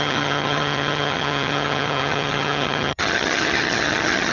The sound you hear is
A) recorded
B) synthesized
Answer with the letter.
B